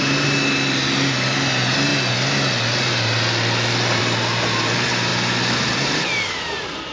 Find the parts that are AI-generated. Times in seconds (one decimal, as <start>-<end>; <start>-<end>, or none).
none